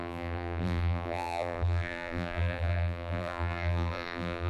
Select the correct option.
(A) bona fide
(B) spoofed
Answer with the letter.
B